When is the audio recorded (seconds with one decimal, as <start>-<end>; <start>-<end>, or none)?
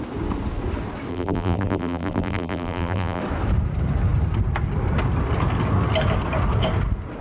0.0-1.1; 3.2-7.2